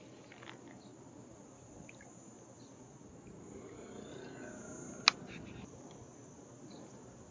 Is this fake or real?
real